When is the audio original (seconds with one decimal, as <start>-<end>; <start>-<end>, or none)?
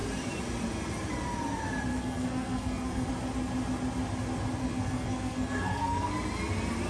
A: 0.0-1.9; 3.1-4.6; 6.1-6.9